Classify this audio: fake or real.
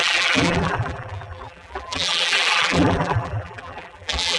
fake